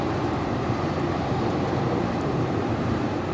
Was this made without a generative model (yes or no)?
no